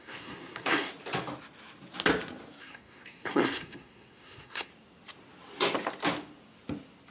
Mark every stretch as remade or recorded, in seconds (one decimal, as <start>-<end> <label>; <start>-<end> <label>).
0.0-0.9 remade; 0.9-2.6 recorded; 2.6-4.7 remade; 4.7-7.1 recorded